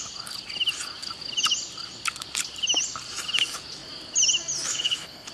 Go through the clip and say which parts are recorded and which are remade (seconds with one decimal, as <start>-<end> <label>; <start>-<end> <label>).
0.0-4.7 recorded; 4.7-5.3 remade